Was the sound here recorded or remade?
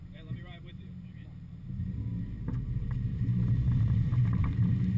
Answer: remade